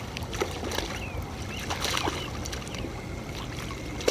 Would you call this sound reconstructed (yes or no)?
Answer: no